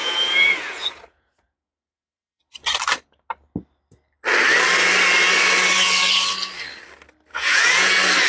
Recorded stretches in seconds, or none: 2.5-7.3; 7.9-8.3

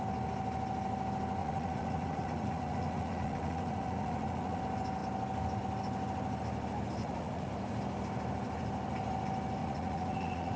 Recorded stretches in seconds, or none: 0.0-1.4; 4.6-7.0; 7.5-9.6

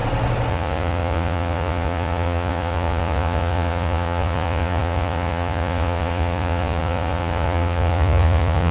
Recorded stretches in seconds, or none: 0.0-0.5

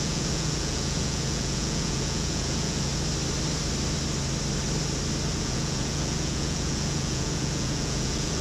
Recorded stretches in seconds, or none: 2.9-5.4